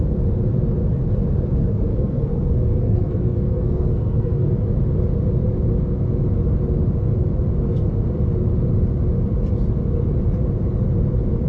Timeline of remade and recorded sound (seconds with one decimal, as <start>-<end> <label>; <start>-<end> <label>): 0.0-1.6 recorded; 1.6-4.6 remade; 4.6-11.5 recorded